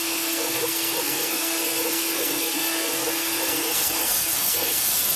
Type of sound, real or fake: fake